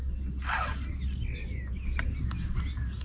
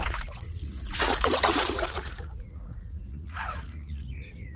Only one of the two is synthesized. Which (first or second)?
second